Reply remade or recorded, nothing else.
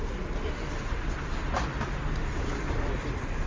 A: recorded